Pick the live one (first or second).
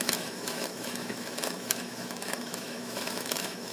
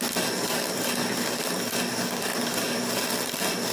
second